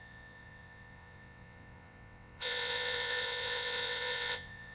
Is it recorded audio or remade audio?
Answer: remade